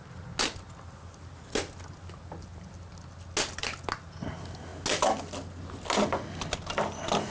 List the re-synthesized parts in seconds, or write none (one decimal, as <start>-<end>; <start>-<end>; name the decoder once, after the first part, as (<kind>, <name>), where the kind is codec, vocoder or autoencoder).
none